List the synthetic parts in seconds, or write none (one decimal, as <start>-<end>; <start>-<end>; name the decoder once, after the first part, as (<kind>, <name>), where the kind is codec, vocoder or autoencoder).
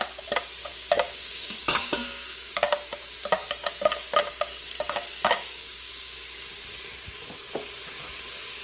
0.7-2.9 (codec, DAC); 3.4-6.5